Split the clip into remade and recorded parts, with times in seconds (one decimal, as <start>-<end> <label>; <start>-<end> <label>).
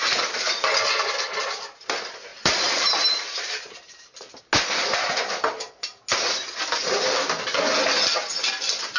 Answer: 0.0-2.3 recorded; 2.3-4.4 remade; 4.4-9.0 recorded